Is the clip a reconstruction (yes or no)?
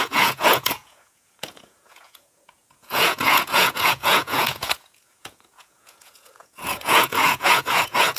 yes